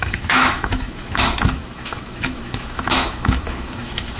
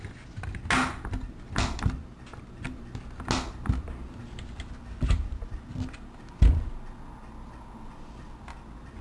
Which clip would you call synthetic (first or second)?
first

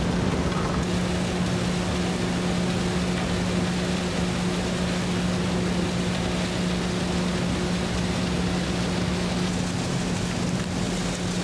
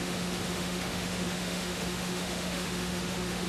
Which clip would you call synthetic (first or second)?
second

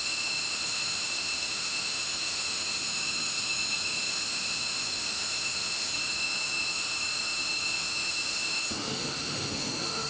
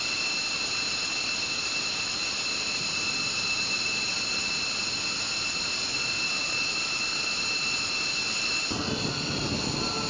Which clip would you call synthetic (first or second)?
first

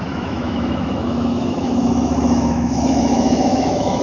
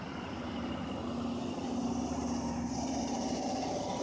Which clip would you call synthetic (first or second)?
first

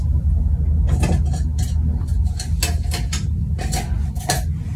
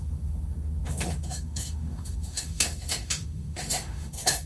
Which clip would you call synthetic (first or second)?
second